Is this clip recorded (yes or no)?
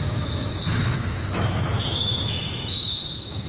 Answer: no